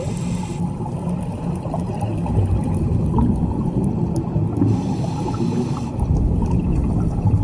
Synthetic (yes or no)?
no